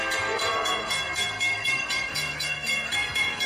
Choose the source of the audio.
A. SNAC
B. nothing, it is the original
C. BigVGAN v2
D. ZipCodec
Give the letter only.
A